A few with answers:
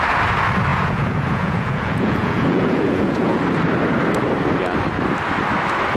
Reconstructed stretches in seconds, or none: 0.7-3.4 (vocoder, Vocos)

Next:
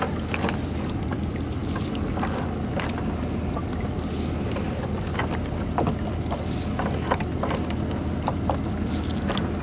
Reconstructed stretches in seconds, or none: none

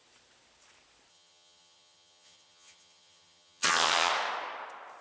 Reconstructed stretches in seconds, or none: 1.1-4.1 (vocoder, HiFi-GAN)

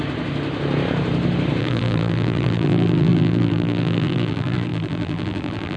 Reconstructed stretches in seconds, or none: 1.6-5.8 (vocoder, BigVGAN v2)

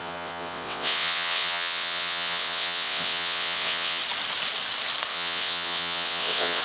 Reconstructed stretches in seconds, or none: 0.0-4.0 (vocoder, WaveNeXt); 5.1-6.6

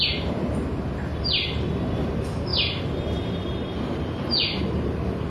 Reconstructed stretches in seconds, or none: none

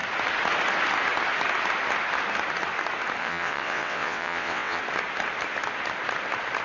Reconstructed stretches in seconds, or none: 3.2-4.8 (vocoder, WaveNeXt)

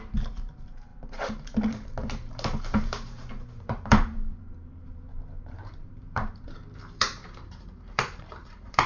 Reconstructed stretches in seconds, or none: 0.0-0.9 (vocoder, BigVGAN v2); 2.6-8.9